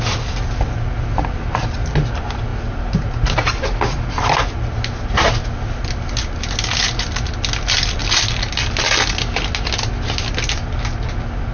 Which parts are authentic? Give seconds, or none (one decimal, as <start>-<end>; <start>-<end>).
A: 0.0-11.5